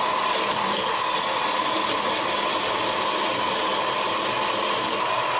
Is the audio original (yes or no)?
yes